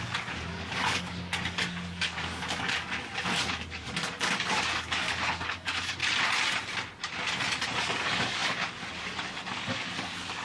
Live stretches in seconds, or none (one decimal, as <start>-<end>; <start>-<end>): 6.0-7.8